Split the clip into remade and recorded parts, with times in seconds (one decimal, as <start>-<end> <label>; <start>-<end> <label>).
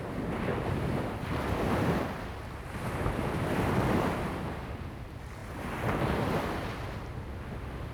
0.0-7.9 recorded